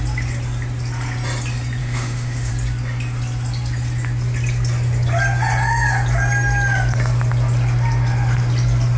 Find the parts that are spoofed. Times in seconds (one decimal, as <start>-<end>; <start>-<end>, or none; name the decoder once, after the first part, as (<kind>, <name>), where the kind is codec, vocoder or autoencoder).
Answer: 1.8-2.5 (autoencoder, DAC-VAE)